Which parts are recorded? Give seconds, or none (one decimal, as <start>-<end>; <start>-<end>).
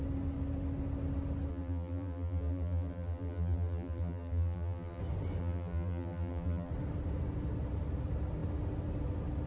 0.0-1.5; 5.0-5.4; 6.7-9.5